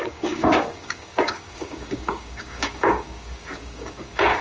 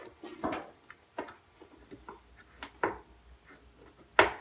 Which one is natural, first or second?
second